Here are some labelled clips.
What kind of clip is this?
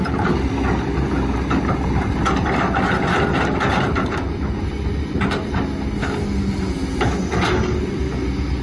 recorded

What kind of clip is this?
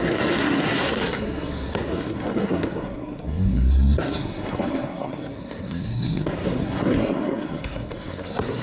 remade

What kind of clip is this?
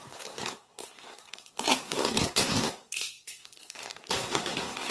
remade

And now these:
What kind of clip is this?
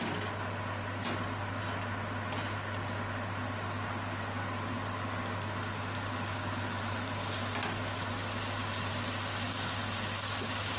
recorded